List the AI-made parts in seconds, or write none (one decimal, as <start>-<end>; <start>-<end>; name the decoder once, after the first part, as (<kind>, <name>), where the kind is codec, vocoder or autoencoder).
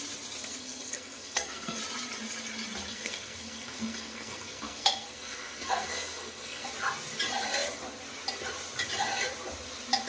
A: 0.4-1.8 (codec, SNAC); 2.9-6.7